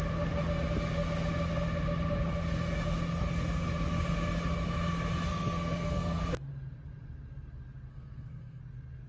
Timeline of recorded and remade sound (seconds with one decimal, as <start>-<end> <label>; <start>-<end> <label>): 0.0-5.3 recorded; 5.3-6.2 remade; 6.2-7.9 recorded; 7.9-8.6 remade; 8.6-9.1 recorded